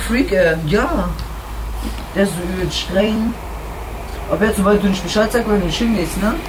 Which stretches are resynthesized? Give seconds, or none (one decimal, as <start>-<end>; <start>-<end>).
3.0-4.1; 5.6-6.5